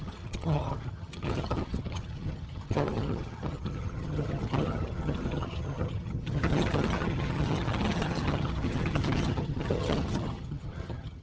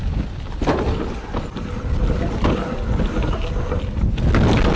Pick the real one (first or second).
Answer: second